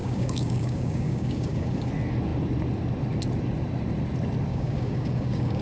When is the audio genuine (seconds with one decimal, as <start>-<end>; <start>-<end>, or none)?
1.9-4.5